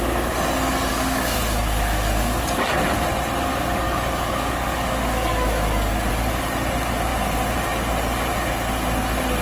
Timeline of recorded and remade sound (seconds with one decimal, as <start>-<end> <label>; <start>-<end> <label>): 0.0-0.9 recorded; 0.9-2.7 remade; 2.7-3.5 recorded; 3.5-6.1 remade; 6.1-9.4 recorded